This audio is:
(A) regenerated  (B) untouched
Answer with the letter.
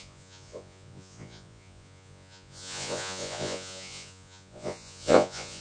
A